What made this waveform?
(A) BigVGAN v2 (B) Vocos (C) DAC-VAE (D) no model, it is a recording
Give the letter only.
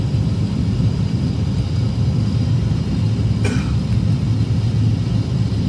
D